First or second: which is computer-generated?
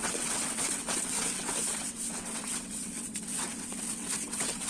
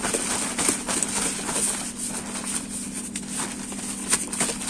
first